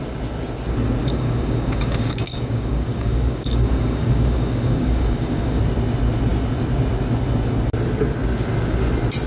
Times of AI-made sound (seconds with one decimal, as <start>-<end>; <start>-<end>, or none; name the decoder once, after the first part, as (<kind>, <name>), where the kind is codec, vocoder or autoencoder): 1.0-5.6 (codec, DAC)